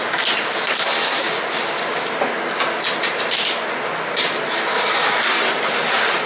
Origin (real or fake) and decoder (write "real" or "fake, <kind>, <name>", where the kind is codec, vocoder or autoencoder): real